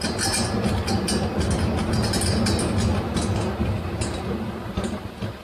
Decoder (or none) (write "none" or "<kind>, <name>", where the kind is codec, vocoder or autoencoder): none